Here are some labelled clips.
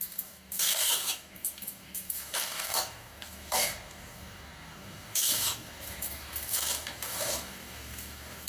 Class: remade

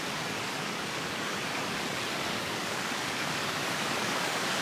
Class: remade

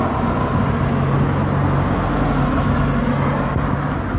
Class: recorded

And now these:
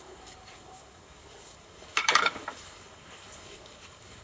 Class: remade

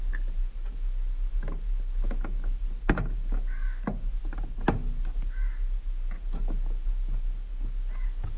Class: recorded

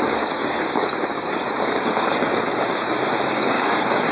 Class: remade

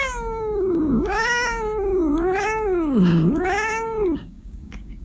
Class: remade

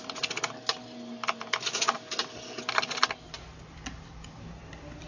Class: recorded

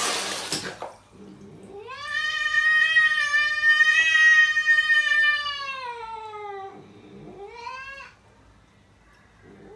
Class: recorded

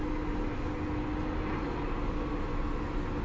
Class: recorded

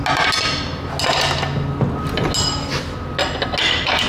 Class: recorded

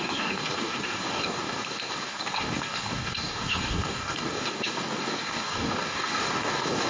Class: remade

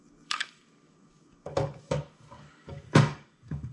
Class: remade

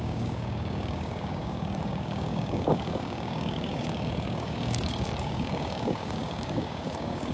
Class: remade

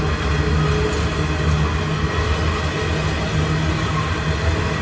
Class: recorded